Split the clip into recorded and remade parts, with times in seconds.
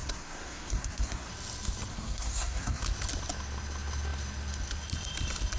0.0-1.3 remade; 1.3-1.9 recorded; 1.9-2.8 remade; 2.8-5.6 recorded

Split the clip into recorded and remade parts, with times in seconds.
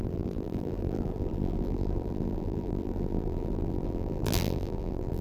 0.0-5.2 remade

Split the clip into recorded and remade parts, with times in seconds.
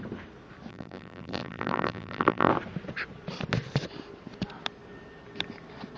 0.0-0.7 recorded; 0.7-2.5 remade; 2.5-6.0 recorded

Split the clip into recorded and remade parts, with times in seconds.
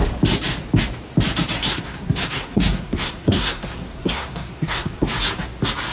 0.0-1.6 recorded; 1.6-5.1 remade; 5.1-5.9 recorded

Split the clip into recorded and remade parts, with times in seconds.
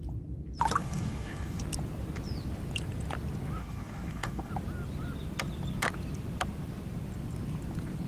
0.0-0.8 recorded; 0.8-1.6 remade; 1.6-3.6 recorded; 3.6-4.5 remade; 4.5-8.1 recorded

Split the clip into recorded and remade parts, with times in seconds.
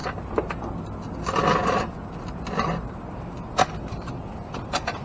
0.0-5.0 recorded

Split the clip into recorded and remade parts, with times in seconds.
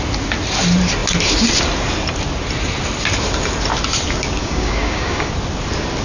0.0-4.4 recorded; 4.4-5.3 remade; 5.3-6.0 recorded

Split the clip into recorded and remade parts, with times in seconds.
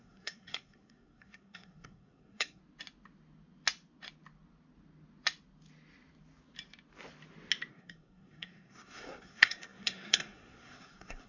0.0-2.6 remade; 2.6-7.7 recorded; 7.7-11.3 remade